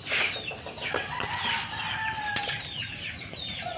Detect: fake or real fake